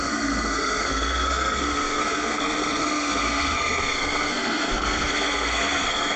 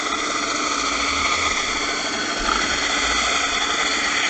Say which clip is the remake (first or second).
first